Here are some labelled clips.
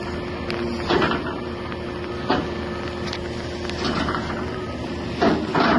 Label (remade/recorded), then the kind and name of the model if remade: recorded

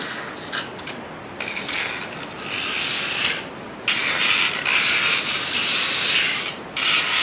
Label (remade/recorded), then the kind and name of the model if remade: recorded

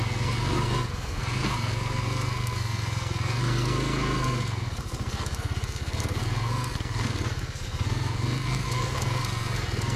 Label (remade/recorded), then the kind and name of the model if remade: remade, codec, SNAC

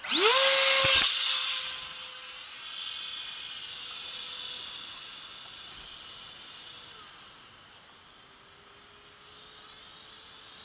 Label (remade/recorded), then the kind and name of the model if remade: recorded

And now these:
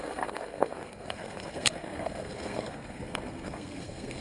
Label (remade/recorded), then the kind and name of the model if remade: remade, codec, SNAC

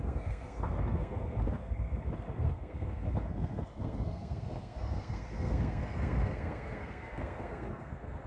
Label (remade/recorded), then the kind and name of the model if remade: remade, codec, SNAC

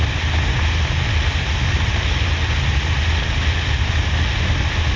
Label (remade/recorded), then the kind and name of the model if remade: recorded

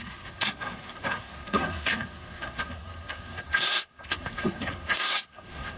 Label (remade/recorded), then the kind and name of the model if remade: remade, codec, SNAC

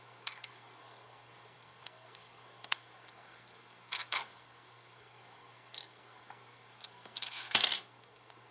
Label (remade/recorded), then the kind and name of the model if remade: remade, codec, SNAC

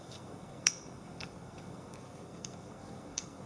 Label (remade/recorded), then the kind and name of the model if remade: remade, codec, SNAC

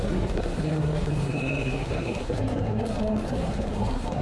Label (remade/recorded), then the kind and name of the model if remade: remade, codec, SNAC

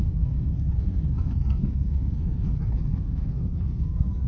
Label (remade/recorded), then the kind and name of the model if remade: remade, codec, SNAC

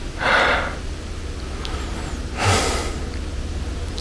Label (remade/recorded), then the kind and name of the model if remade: recorded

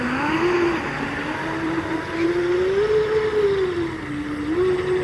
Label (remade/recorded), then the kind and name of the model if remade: recorded